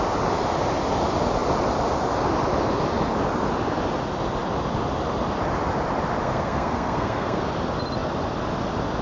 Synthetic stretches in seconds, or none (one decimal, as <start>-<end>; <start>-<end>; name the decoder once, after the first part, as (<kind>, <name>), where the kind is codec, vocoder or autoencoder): 6.2-7.4 (codec, SNAC)